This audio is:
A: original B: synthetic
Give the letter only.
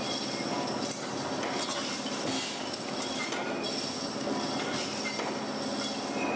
A